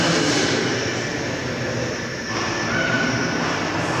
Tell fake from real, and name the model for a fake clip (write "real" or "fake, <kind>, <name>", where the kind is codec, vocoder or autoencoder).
real